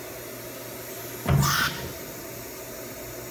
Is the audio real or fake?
real